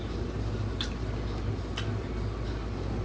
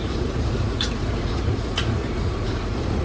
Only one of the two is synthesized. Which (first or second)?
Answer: second